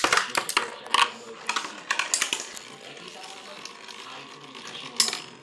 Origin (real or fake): real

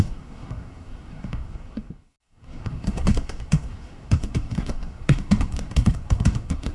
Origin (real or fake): fake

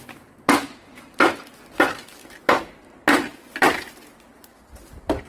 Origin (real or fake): real